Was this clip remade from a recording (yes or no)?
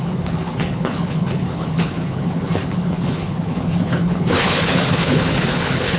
yes